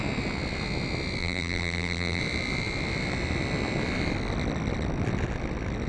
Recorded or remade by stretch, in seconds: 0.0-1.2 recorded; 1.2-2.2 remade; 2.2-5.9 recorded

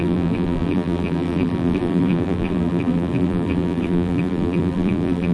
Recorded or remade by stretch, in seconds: 0.0-5.3 remade

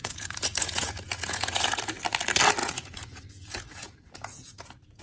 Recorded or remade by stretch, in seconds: 0.0-1.9 remade; 1.9-2.6 recorded; 2.6-5.0 remade